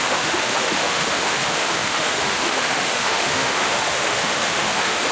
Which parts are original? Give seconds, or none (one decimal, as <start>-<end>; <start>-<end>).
none